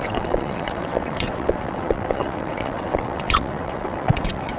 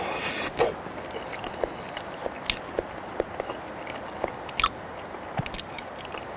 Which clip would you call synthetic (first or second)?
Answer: first